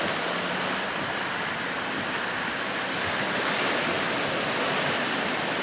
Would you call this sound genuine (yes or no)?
yes